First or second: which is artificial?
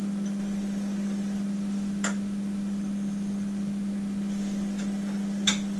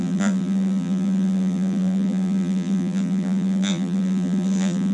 second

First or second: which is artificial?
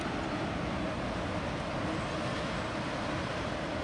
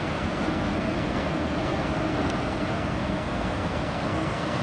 second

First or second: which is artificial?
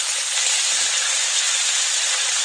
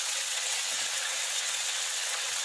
second